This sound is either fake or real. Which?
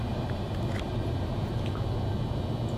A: fake